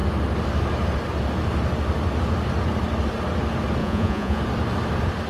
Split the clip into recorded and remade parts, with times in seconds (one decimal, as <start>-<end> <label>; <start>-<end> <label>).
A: 0.0-3.8 recorded; 3.8-4.4 remade; 4.4-5.3 recorded